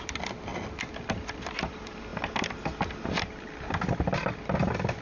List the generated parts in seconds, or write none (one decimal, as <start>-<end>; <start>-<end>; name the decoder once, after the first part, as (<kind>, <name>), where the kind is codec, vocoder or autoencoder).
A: none